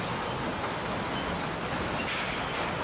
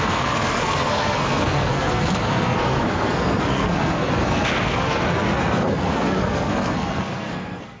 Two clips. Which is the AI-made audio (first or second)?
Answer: second